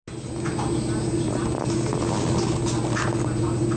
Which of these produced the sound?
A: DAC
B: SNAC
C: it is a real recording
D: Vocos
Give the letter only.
C